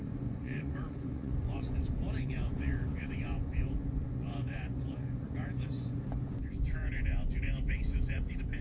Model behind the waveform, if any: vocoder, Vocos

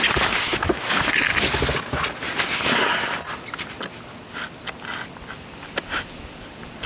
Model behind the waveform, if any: none